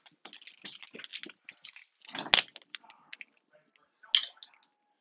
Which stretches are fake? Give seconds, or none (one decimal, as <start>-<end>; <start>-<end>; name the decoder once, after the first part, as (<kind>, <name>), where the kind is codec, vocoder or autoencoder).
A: none